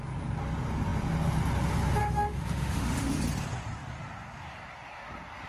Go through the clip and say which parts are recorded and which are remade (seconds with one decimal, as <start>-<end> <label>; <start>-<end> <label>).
0.0-2.0 recorded; 2.0-3.2 remade; 3.2-5.5 recorded